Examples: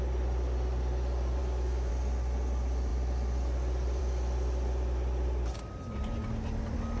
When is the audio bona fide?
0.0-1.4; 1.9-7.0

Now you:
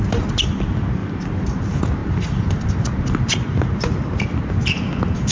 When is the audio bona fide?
0.0-5.3